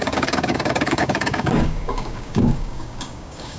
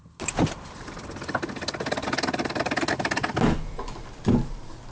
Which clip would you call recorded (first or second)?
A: second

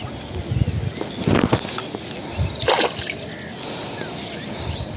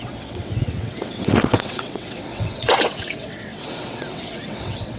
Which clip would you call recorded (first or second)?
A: first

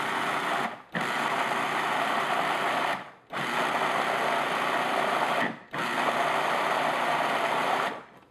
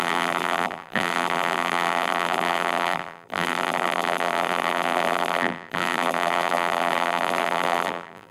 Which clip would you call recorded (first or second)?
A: first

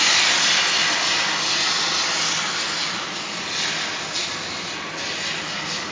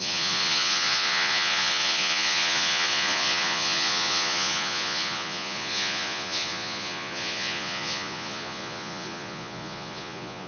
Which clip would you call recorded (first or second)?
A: first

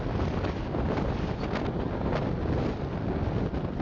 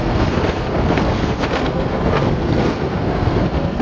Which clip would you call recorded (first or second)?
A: first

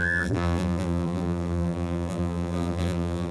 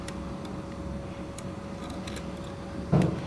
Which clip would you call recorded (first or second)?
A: second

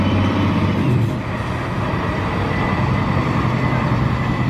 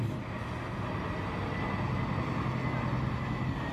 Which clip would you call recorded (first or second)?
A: second